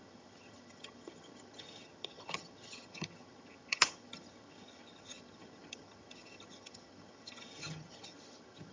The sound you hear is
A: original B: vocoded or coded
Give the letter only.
B